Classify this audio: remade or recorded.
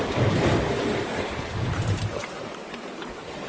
recorded